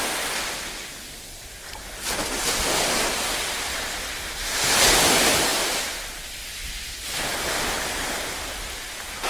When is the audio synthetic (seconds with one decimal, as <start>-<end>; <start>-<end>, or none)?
none